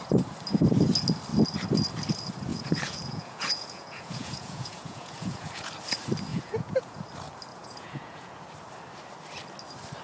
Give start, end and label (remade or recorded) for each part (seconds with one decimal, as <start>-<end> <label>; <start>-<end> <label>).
0.0-2.5 recorded; 2.5-5.7 remade; 5.7-6.3 recorded; 6.3-7.0 remade; 7.0-7.5 recorded; 7.5-8.3 remade; 8.3-10.0 recorded